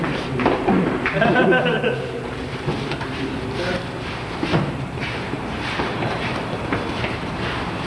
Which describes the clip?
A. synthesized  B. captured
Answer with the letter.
A